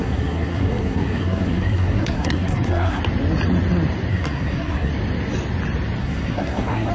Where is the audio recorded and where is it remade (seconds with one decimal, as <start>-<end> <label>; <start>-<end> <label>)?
0.0-3.0 remade; 3.0-4.1 recorded; 4.1-4.9 remade; 4.9-6.0 recorded; 6.0-6.9 remade